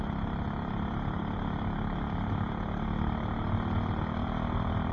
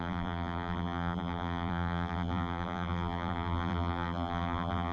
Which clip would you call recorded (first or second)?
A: first